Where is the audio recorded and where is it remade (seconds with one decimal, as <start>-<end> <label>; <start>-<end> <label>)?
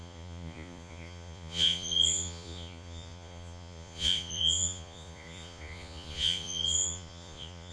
0.0-7.7 remade